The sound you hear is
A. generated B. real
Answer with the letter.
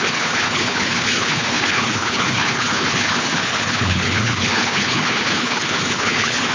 A